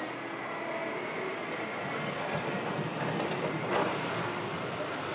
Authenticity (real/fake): real